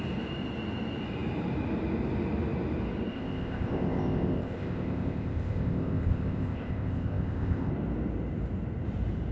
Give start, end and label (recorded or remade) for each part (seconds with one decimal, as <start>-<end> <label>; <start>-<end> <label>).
0.0-3.1 recorded; 3.1-7.7 remade; 7.7-9.3 recorded